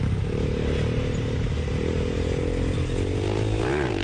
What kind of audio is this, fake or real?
real